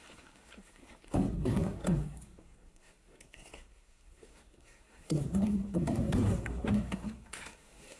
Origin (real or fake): fake